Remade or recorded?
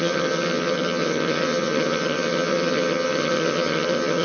remade